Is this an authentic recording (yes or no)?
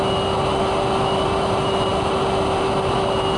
yes